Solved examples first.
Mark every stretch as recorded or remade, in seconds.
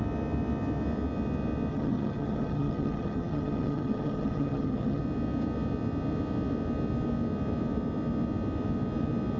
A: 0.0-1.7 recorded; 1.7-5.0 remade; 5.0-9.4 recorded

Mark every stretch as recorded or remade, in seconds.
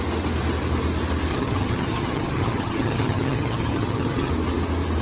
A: 0.0-1.3 recorded; 1.3-4.3 remade; 4.3-5.0 recorded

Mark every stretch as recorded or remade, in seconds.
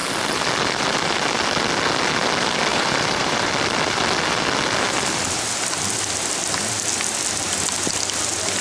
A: 0.0-2.7 recorded; 2.7-3.5 remade; 3.5-8.6 recorded